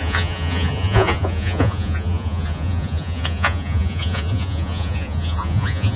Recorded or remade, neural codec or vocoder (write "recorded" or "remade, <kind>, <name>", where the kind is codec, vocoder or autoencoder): remade, vocoder, Vocos